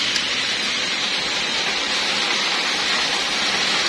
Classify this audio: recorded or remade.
recorded